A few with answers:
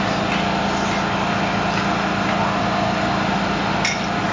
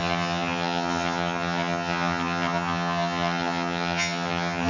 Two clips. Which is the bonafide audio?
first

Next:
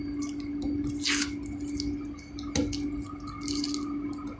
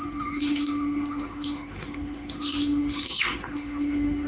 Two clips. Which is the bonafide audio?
first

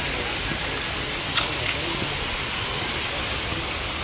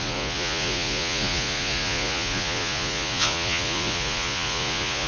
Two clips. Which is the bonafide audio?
first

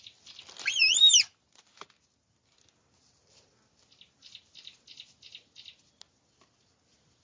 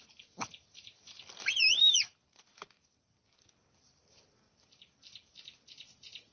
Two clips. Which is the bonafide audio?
first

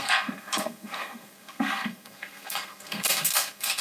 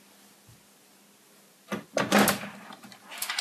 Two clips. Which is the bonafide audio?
second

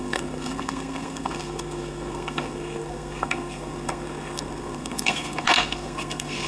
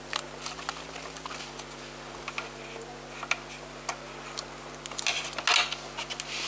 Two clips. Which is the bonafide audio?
second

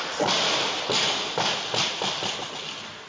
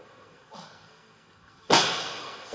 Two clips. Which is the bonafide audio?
first